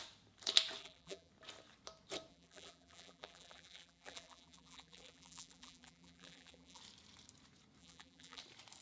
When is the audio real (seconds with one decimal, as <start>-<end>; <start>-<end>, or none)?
0.0-0.8; 1.3-2.3; 6.8-7.8; 8.4-8.8